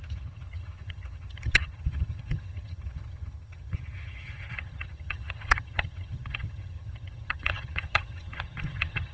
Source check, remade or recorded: remade